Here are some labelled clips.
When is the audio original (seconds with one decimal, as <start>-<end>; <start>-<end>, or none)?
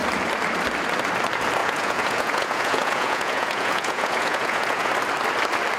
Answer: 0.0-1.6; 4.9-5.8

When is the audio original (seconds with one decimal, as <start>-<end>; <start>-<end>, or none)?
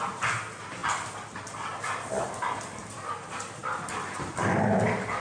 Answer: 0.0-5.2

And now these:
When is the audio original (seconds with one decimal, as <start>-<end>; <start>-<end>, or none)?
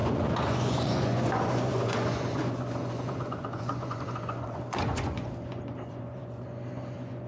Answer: none